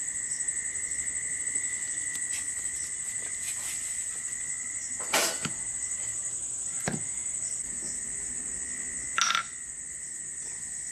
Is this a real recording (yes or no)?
yes